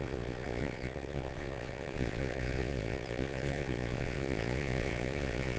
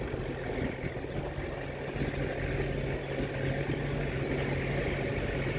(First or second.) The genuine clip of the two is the second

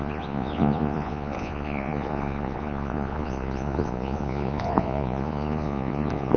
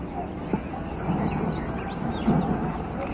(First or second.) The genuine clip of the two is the second